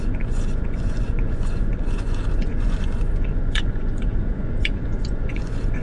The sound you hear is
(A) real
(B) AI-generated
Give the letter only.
B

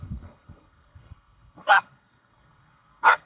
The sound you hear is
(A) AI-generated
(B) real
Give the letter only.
A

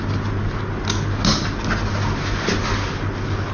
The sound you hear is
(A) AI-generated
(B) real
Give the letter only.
B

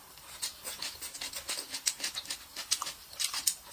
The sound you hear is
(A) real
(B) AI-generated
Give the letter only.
A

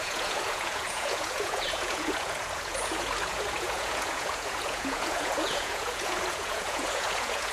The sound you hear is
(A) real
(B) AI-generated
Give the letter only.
B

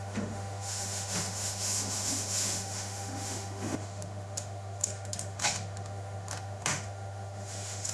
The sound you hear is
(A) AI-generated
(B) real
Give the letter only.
A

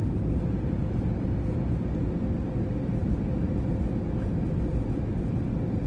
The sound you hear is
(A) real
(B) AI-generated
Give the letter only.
A